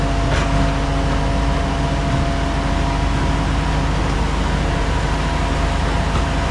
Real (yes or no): yes